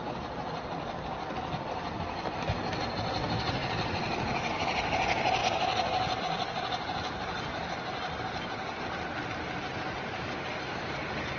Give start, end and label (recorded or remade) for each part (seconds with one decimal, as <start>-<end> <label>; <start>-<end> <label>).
0.0-5.4 recorded; 5.4-6.2 remade; 6.2-11.4 recorded

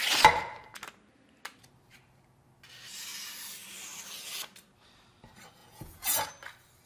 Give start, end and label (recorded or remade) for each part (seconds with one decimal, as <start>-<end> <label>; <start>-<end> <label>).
0.0-5.6 recorded; 5.6-6.3 remade; 6.3-6.9 recorded

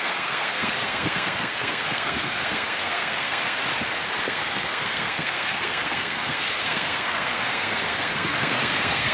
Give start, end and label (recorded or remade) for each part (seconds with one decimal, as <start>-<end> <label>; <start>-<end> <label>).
0.0-3.6 remade; 3.6-4.2 recorded; 4.2-9.1 remade

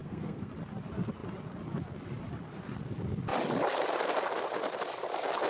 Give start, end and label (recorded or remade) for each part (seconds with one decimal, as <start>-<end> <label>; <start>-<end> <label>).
0.0-0.5 remade; 0.5-5.5 recorded

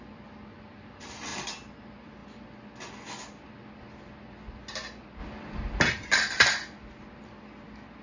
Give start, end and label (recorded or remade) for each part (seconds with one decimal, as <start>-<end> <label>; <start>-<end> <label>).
0.0-8.0 recorded

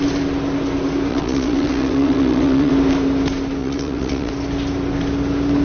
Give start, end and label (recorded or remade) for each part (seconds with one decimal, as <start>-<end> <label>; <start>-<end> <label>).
0.0-1.1 recorded; 1.1-2.7 remade; 2.7-3.6 recorded; 3.6-4.3 remade; 4.3-5.6 recorded